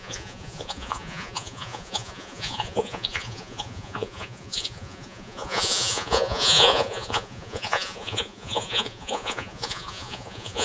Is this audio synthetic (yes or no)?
yes